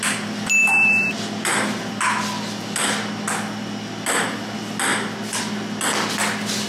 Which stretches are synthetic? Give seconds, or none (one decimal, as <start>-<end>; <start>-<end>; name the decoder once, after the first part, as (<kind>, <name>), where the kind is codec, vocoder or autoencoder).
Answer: 0.6-1.9 (vocoder, BigVGAN v2)